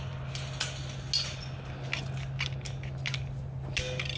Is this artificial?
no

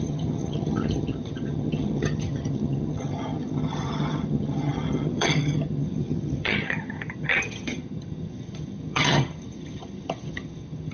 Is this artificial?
yes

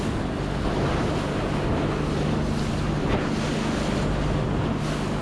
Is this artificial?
no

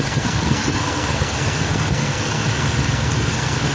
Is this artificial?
yes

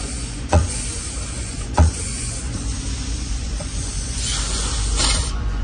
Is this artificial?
yes